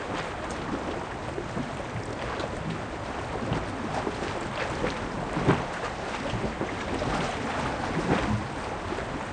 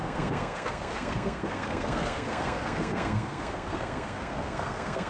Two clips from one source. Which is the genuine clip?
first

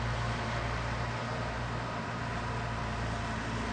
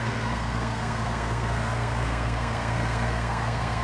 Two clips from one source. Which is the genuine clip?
first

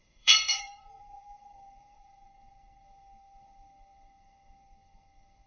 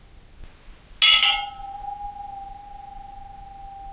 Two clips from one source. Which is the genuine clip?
second